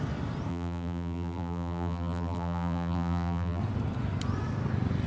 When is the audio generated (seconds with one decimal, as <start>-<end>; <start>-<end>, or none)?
0.5-3.6